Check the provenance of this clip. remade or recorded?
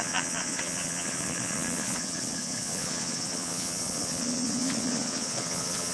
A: remade